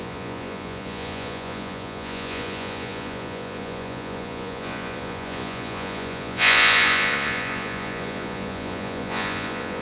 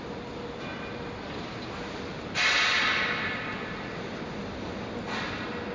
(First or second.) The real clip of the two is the second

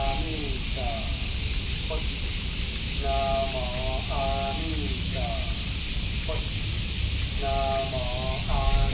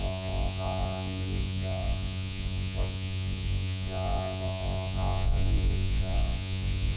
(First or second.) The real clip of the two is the first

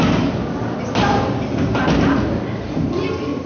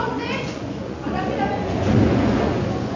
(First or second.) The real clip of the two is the first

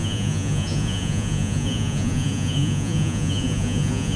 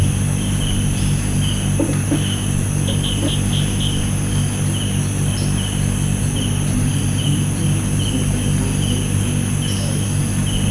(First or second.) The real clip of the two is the second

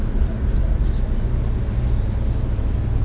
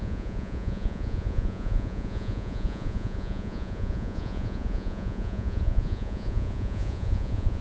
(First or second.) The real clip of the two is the first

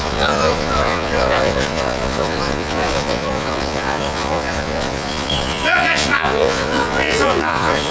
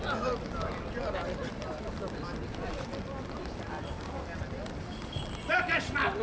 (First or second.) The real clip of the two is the second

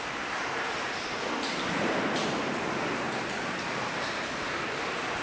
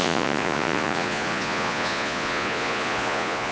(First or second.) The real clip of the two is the first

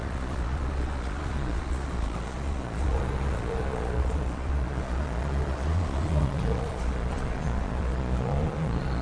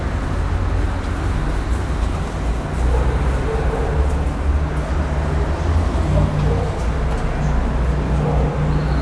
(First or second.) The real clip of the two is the second